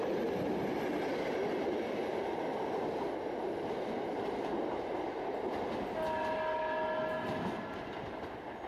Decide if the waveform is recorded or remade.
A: recorded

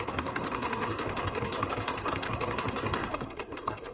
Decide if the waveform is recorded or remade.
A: remade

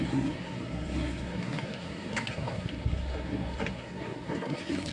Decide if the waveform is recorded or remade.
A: remade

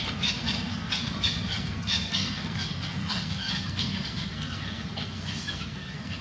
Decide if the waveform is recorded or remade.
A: remade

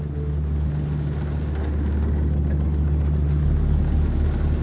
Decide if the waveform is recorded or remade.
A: recorded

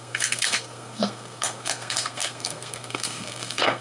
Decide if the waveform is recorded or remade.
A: remade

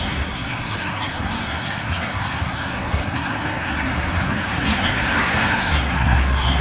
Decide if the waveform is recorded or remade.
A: remade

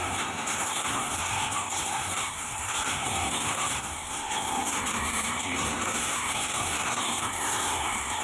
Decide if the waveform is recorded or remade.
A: remade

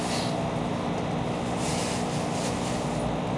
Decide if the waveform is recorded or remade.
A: recorded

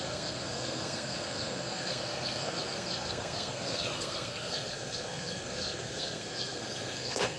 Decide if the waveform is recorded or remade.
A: remade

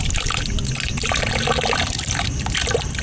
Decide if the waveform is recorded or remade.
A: recorded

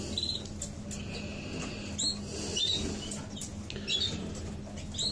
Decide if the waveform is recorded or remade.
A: recorded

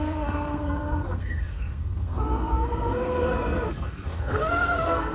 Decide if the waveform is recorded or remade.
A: remade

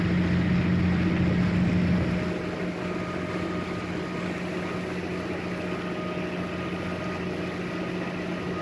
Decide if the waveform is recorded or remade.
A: recorded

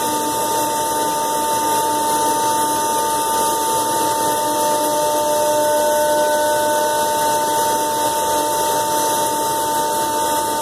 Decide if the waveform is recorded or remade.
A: recorded